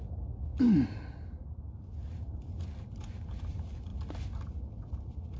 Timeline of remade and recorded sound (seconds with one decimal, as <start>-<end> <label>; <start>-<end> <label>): 0.0-5.4 recorded